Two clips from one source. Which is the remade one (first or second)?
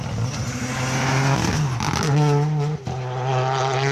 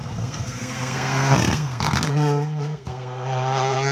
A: second